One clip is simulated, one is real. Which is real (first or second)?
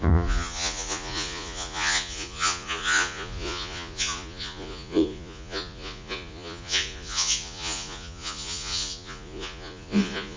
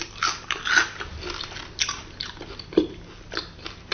second